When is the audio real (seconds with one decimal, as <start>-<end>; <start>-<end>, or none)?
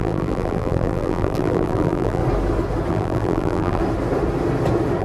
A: 2.2-2.9; 3.8-5.0